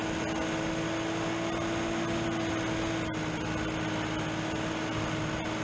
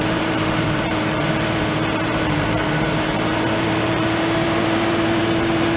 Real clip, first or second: first